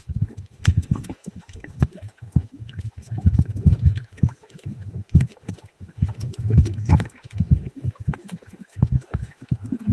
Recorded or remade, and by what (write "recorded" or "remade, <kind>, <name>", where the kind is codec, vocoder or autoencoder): remade, autoencoder, DAC-VAE